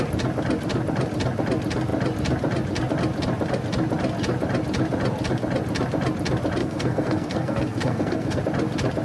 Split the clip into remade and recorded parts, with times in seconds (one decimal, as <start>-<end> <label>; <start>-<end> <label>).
0.0-6.6 recorded; 6.6-8.4 remade; 8.4-9.0 recorded